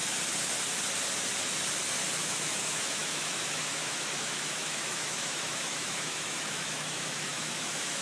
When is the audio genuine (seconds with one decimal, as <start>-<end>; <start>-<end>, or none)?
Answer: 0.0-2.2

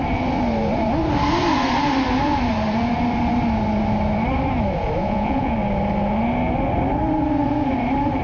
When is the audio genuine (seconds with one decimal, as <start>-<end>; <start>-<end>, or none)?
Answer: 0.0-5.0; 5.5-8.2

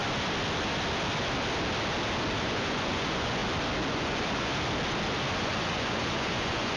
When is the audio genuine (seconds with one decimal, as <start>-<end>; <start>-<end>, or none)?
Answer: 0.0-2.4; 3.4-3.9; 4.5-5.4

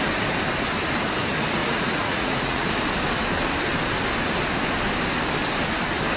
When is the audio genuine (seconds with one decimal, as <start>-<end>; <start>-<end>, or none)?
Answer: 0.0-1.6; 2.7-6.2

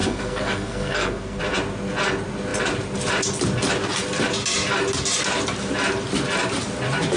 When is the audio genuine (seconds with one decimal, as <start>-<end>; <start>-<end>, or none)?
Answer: 1.4-7.2